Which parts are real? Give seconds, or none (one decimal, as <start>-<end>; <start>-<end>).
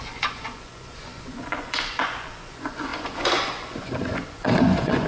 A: none